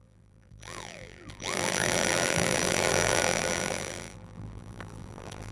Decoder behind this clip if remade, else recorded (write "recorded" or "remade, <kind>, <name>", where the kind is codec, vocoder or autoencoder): remade, vocoder, BigVGAN v2